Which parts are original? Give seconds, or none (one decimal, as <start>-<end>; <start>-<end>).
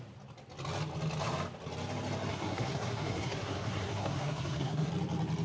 0.0-2.3; 4.9-5.4